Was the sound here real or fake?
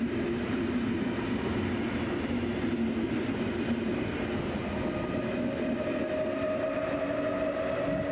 real